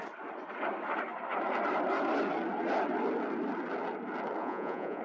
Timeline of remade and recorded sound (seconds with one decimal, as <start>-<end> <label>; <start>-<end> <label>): 0.0-4.4 recorded; 4.4-5.0 remade